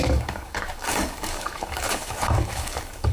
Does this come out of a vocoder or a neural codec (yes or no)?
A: yes